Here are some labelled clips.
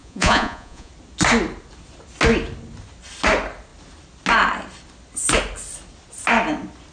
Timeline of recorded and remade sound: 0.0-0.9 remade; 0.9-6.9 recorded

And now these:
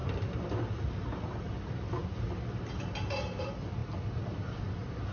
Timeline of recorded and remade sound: 0.0-5.1 recorded

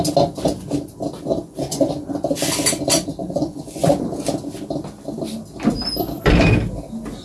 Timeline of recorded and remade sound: 0.0-1.3 recorded; 1.3-1.9 remade; 1.9-3.2 recorded; 3.2-3.9 remade; 3.9-7.2 recorded

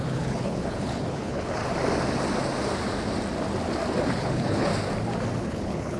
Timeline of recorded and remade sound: 0.0-1.6 remade; 1.6-4.1 recorded; 4.1-4.7 remade; 4.7-5.4 recorded; 5.4-6.0 remade

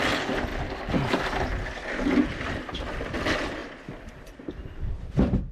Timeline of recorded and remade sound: 0.0-5.5 recorded

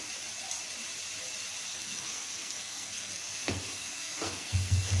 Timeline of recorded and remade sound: 0.0-1.7 recorded; 1.7-5.0 remade

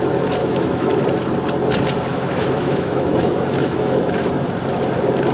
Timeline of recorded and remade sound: 0.0-0.4 recorded; 0.4-0.9 remade; 0.9-2.1 recorded; 2.1-4.3 remade; 4.3-5.3 recorded

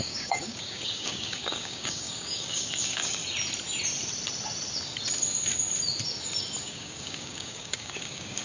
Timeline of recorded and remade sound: 0.0-3.2 remade; 3.2-6.6 recorded; 6.6-8.4 remade